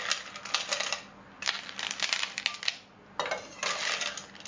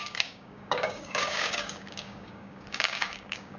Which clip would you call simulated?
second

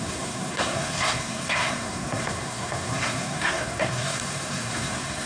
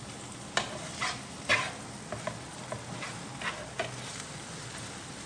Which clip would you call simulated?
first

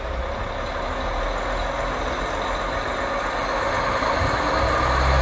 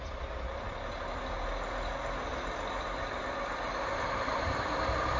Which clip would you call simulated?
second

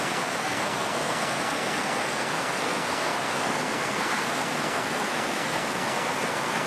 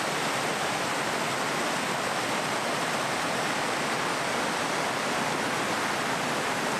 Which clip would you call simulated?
first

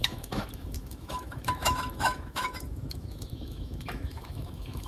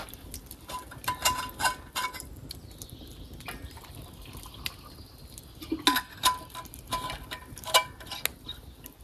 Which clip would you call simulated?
first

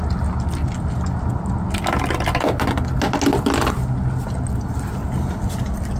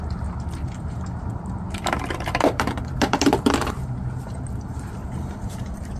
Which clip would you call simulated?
second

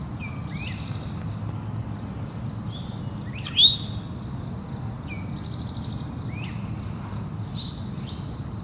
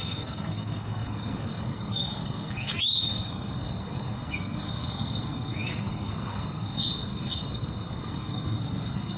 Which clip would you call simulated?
second